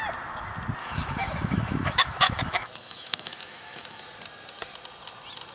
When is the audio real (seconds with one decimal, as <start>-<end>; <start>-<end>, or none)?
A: 0.0-0.8; 4.0-5.5